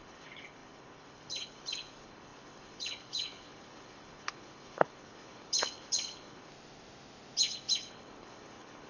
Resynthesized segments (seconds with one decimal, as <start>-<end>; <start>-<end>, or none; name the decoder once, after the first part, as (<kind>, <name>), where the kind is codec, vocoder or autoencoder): 0.0-6.5 (codec, HILCodec); 7.9-8.9